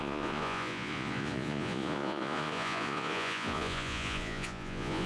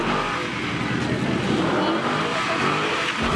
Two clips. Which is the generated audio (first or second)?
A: first